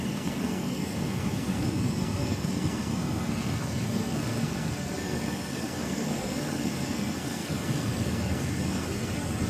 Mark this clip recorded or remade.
remade